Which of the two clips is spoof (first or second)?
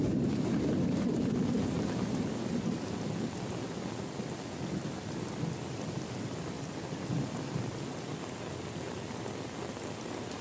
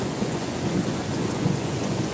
second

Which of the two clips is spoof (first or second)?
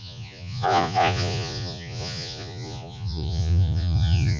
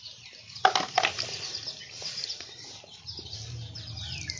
first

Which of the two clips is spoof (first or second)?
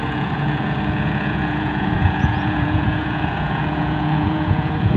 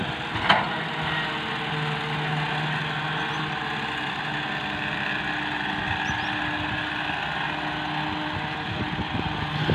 first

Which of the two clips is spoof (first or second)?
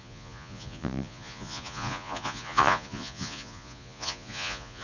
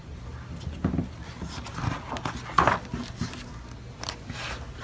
first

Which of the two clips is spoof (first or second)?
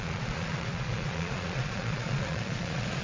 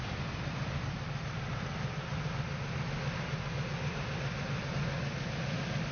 first